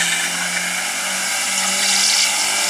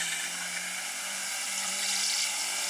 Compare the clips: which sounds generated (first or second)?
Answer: second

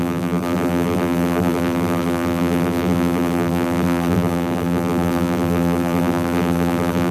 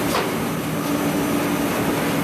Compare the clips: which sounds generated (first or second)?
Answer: first